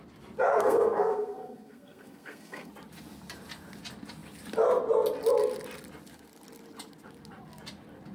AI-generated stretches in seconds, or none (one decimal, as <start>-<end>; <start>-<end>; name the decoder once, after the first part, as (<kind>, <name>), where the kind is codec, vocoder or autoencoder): 0.5-2.7 (codec, SNAC)